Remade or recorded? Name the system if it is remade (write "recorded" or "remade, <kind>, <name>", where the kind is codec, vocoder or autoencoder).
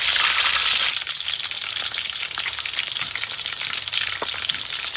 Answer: recorded